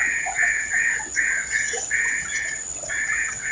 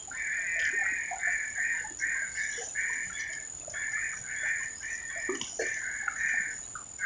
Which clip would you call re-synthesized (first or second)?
first